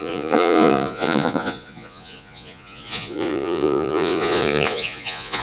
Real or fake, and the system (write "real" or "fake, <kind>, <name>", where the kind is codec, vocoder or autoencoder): fake, vocoder, Vocos